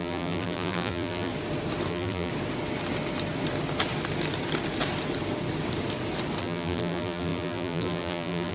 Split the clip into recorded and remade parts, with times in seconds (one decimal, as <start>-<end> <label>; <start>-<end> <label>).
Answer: 0.0-1.3 remade; 1.3-1.9 recorded; 1.9-2.3 remade; 2.3-6.4 recorded; 6.4-8.5 remade